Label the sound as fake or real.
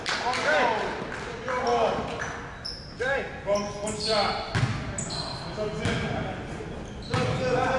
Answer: real